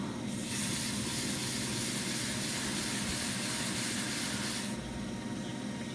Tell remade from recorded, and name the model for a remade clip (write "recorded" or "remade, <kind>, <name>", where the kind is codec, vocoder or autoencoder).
recorded